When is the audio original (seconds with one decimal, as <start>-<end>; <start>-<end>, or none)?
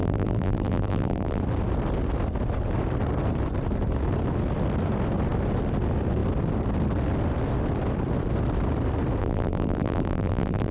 1.4-9.2